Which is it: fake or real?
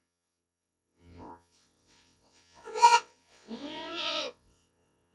fake